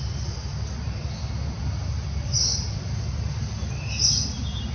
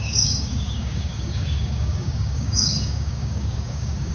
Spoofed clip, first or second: second